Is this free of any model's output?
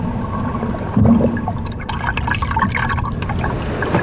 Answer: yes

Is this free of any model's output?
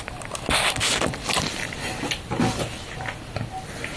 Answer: yes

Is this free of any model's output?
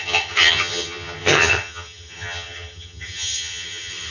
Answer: no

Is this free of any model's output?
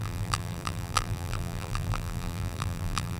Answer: no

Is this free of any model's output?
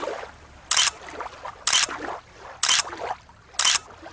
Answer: yes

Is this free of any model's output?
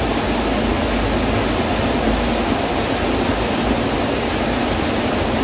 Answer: yes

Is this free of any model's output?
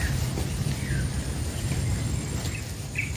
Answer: yes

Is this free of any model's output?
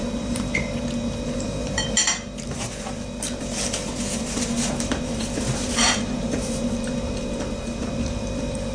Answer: no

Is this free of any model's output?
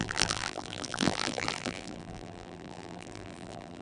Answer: no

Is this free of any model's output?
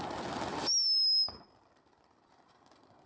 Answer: yes